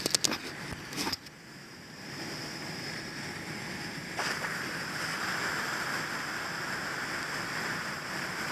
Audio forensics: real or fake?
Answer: real